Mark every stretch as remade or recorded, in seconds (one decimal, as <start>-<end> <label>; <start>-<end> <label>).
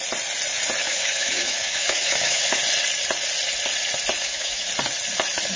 0.0-0.8 recorded; 0.8-2.6 remade; 2.6-4.2 recorded; 4.2-4.7 remade; 4.7-5.6 recorded